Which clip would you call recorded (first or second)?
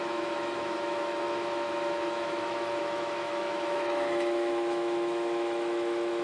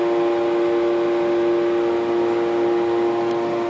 second